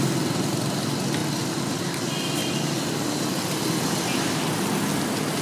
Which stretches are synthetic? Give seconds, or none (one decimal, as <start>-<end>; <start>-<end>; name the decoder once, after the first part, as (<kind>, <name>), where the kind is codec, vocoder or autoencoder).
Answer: none